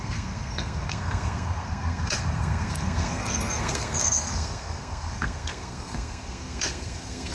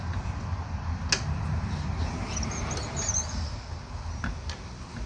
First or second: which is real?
second